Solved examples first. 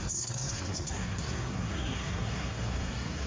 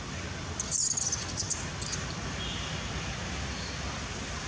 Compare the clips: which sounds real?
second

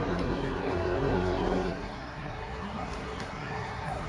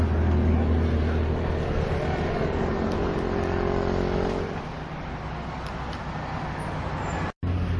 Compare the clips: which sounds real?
second